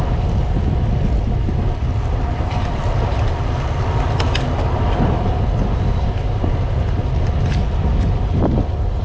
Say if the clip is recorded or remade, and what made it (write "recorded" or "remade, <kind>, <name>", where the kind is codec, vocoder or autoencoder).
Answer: recorded